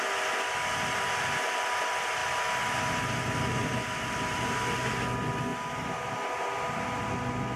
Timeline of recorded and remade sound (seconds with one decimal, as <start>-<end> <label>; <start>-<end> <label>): 0.0-5.5 recorded; 5.5-7.1 remade; 7.1-7.6 recorded